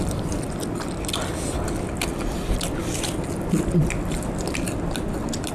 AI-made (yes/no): no